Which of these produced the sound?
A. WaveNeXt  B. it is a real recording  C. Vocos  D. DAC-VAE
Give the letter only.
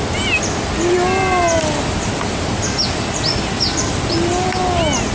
B